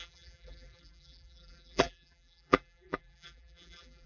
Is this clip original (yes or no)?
no